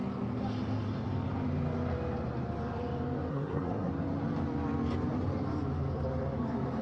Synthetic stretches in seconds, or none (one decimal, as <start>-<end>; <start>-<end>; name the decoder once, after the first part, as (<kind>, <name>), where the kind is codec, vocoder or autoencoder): 3.3-3.9 (codec, SNAC)